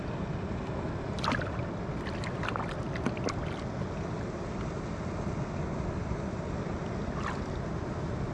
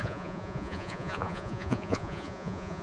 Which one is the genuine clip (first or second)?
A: first